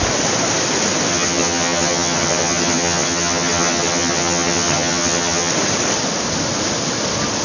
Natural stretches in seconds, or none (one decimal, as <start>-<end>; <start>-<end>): 0.0-1.1; 5.5-7.4